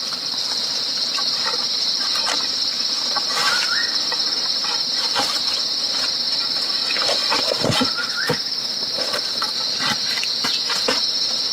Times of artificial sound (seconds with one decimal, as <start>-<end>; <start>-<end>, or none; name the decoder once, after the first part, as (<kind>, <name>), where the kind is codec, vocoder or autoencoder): none